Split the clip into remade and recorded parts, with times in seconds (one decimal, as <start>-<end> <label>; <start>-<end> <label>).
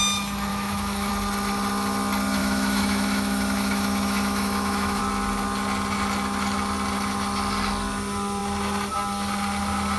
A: 0.0-0.5 recorded; 0.5-1.1 remade; 1.1-2.4 recorded; 2.4-5.0 remade; 5.0-10.0 recorded